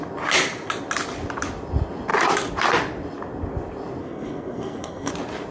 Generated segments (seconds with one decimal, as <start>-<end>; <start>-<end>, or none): 4.0-5.1